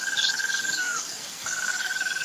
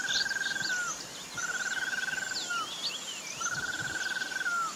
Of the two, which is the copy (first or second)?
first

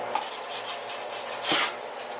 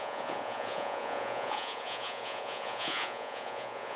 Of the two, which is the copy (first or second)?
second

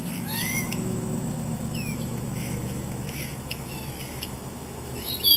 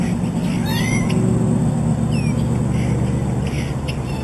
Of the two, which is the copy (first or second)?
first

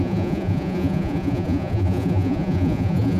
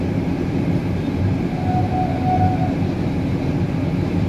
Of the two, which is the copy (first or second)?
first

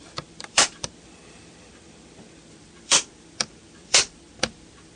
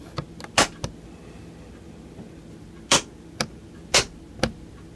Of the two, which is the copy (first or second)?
first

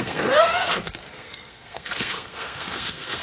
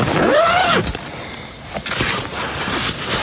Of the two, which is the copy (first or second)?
first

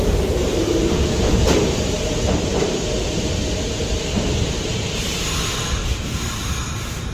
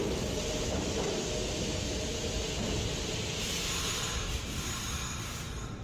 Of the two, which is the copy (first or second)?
first